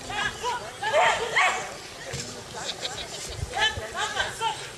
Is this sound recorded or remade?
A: recorded